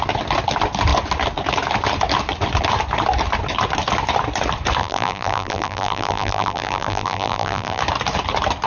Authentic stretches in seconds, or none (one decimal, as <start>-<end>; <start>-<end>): 0.0-4.8; 7.8-8.7

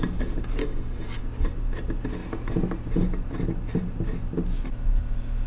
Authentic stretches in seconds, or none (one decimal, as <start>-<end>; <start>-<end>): 0.0-0.6; 1.2-5.5